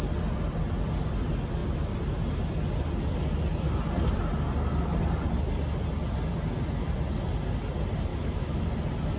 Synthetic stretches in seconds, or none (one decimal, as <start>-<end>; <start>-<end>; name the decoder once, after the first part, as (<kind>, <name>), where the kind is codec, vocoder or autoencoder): 8.1-8.6 (autoencoder, DAC-VAE)